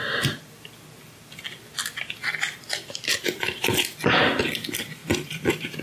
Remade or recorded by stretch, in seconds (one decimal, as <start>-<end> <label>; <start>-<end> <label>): 0.0-5.0 recorded; 5.0-5.8 remade